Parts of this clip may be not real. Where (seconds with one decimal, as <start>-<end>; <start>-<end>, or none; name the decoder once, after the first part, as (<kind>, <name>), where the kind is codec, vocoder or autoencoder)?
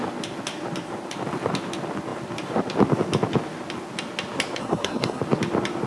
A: 4.6-5.2 (codec, SNAC)